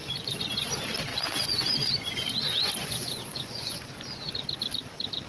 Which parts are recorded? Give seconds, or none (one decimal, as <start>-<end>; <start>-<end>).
0.7-1.1; 4.3-5.3